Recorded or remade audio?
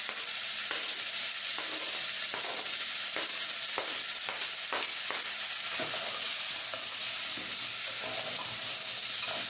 recorded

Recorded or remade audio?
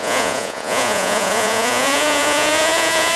remade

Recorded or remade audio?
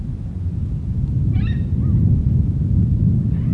recorded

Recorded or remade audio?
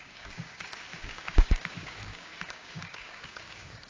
remade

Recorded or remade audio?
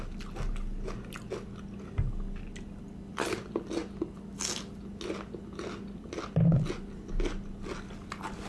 recorded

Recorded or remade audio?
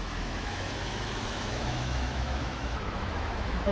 remade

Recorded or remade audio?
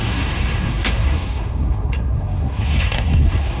remade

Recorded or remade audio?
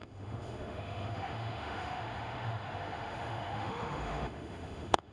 remade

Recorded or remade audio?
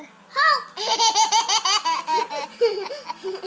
recorded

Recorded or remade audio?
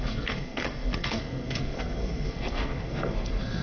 remade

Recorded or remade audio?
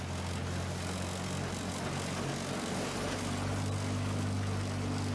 recorded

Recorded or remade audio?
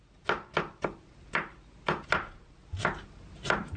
recorded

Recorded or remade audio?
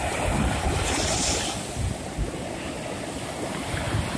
recorded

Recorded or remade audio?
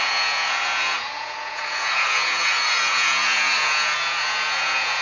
remade